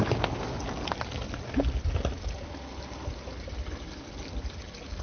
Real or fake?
real